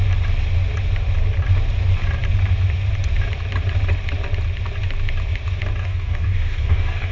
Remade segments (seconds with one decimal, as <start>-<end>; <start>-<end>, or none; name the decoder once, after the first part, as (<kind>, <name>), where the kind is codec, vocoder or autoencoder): 5.8-7.1 (codec, DAC)